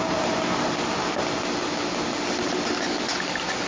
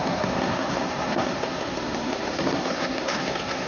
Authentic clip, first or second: first